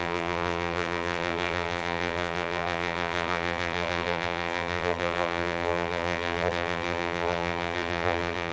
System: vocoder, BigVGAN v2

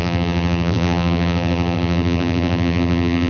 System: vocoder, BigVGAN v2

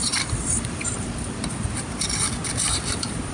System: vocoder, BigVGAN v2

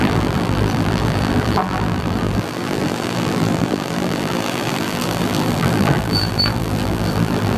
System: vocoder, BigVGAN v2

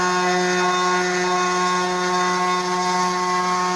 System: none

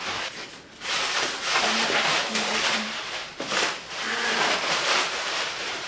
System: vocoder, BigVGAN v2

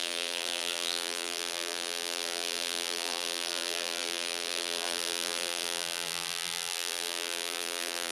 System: vocoder, BigVGAN v2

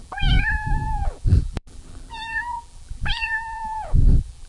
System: vocoder, BigVGAN v2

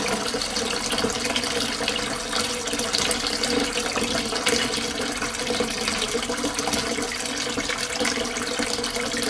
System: none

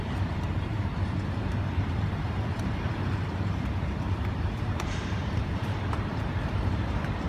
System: vocoder, BigVGAN v2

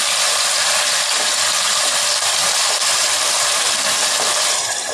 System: vocoder, BigVGAN v2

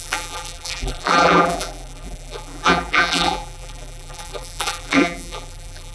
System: vocoder, BigVGAN v2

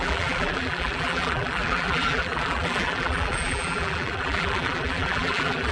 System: vocoder, BigVGAN v2